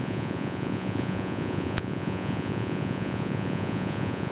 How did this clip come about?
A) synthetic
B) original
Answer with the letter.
A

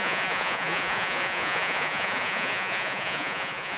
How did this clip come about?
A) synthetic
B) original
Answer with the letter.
A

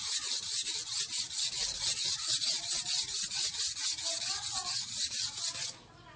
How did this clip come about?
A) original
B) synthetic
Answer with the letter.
A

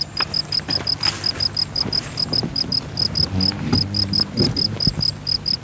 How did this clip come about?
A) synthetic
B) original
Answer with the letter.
B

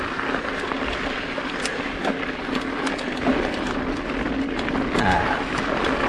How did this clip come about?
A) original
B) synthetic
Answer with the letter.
A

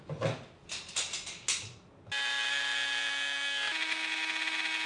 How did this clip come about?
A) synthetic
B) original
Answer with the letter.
B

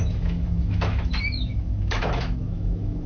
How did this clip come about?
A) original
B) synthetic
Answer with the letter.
B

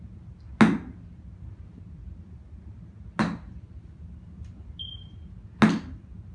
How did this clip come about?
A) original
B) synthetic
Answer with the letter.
A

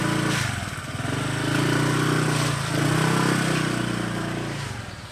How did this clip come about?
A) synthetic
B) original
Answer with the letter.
B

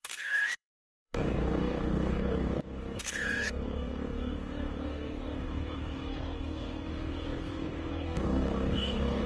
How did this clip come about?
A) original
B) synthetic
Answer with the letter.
B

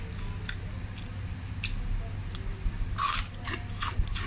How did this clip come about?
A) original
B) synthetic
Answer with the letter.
A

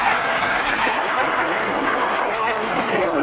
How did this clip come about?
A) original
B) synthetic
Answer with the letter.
B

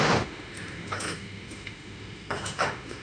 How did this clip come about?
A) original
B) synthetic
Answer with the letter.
B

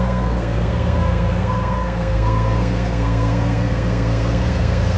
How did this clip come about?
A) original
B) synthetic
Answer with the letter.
B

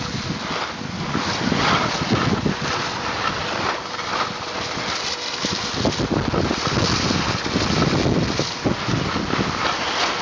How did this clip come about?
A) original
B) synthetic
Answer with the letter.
A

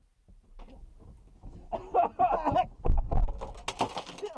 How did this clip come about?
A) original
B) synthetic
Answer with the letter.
A